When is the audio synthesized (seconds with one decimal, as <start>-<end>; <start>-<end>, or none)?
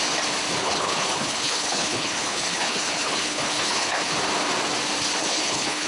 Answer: 0.6-4.1; 5.2-5.9